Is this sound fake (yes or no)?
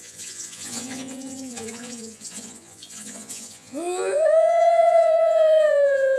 yes